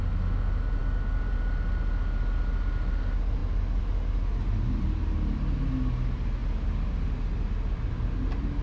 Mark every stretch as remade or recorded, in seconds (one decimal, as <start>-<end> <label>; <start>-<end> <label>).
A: 0.0-8.6 recorded

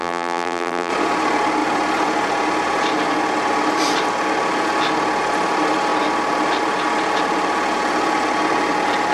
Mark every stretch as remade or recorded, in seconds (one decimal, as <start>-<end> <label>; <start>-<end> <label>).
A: 0.0-0.9 remade; 0.9-9.1 recorded

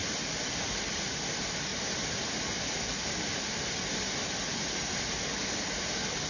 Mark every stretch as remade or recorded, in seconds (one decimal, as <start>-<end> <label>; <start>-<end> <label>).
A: 0.0-6.3 recorded

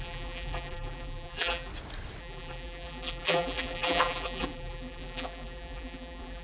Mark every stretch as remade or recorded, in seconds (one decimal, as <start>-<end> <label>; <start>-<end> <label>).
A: 0.0-1.7 remade; 1.7-2.2 recorded; 2.2-6.4 remade

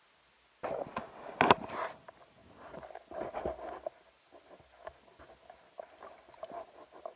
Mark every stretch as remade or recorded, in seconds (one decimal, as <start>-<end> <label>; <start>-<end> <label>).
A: 0.0-7.2 recorded

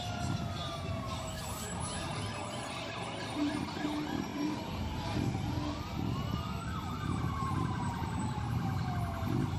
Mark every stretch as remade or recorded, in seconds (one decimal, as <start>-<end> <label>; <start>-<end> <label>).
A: 0.0-2.1 recorded; 2.1-3.5 remade; 3.5-4.3 recorded; 4.3-8.9 remade; 8.9-9.6 recorded

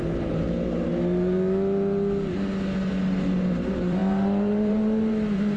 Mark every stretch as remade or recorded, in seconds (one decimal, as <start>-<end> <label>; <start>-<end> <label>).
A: 0.0-0.9 remade; 0.9-3.5 recorded; 3.5-5.6 remade